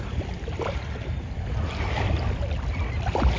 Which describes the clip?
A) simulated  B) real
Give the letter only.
B